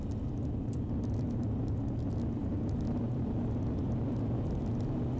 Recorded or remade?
recorded